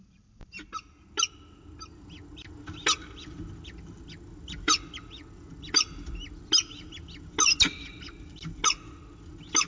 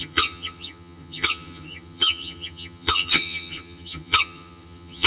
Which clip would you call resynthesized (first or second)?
second